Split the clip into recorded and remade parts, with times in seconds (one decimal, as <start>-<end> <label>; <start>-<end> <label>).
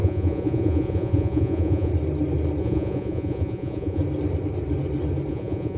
0.0-1.9 remade; 1.9-2.6 recorded; 2.6-4.0 remade; 4.0-5.3 recorded; 5.3-5.8 remade